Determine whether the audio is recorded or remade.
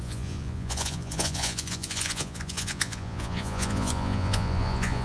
remade